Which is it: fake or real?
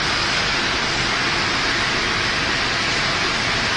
real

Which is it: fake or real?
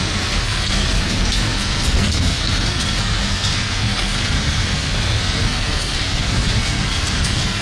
fake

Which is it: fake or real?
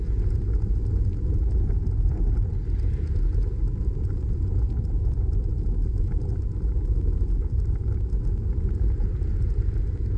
real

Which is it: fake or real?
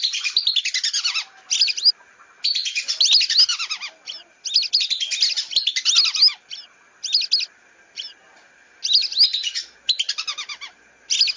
real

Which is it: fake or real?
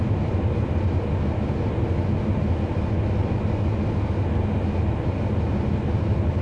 real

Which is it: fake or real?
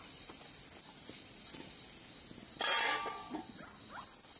real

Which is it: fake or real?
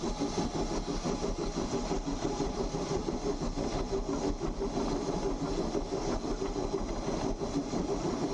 real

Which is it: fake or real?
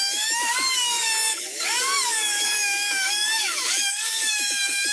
fake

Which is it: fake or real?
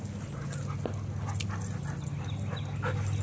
real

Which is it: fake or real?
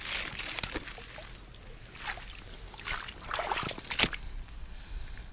real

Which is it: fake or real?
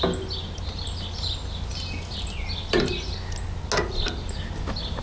real